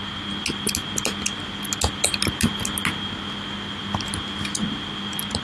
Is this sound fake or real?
real